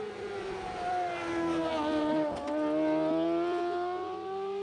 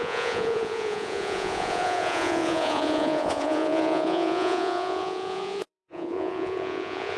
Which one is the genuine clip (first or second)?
first